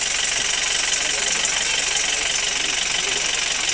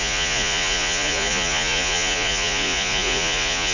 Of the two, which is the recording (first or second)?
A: first